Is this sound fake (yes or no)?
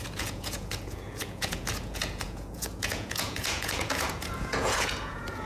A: yes